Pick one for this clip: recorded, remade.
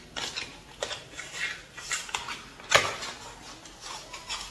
recorded